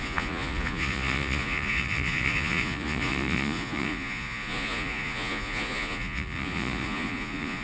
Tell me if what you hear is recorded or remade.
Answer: remade